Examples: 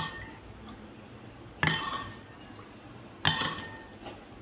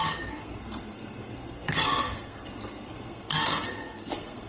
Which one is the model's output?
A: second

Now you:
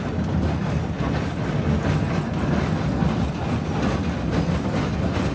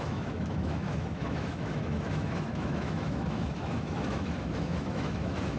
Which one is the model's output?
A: second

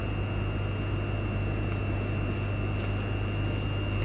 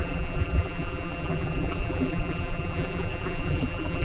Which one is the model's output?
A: second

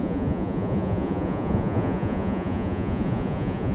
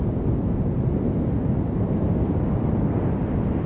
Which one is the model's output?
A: first